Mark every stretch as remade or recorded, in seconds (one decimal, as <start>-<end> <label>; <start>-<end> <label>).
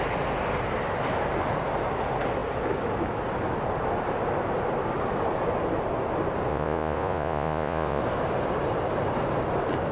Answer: 0.0-6.5 recorded; 6.5-8.0 remade; 8.0-9.9 recorded